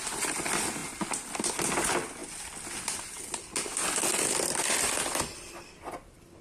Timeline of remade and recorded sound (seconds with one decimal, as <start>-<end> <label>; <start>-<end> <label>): 0.0-6.4 recorded

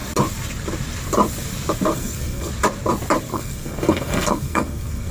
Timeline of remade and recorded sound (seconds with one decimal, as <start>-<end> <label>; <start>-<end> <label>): 0.0-1.9 recorded; 1.9-2.5 remade; 2.5-3.3 recorded; 3.3-5.1 remade

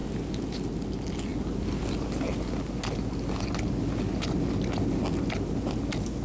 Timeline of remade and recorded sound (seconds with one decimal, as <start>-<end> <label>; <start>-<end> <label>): 0.0-6.2 recorded